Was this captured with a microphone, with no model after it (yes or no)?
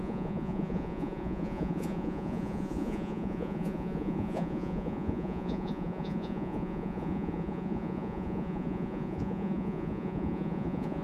no